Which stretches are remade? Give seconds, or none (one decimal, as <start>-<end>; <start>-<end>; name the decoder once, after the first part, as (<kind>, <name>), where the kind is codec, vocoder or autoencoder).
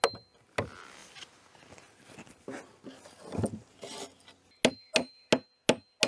none